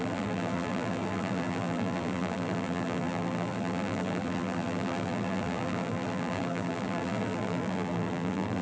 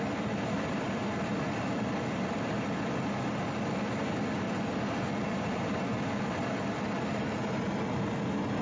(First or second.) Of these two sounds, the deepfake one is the first